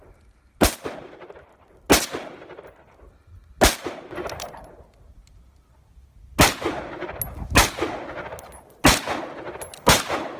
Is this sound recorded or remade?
recorded